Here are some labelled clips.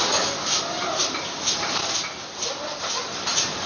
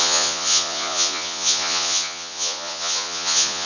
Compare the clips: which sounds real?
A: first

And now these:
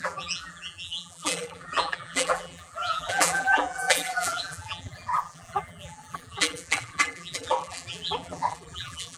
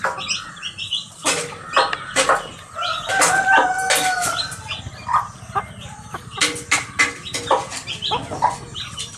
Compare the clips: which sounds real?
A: second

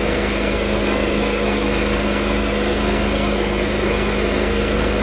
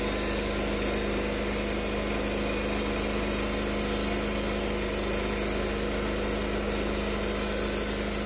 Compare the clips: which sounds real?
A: second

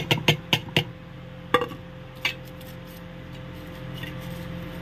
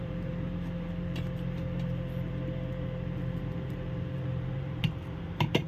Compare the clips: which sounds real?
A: first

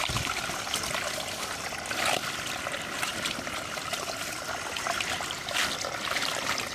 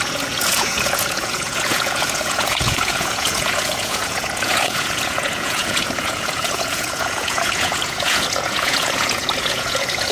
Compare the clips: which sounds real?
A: first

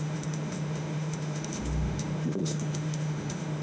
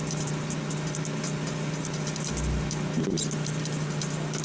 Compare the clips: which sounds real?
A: second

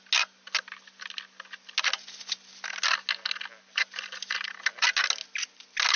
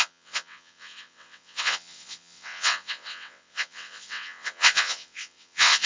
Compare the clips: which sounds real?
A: first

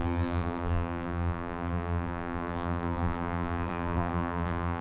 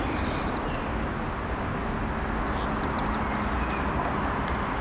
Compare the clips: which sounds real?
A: second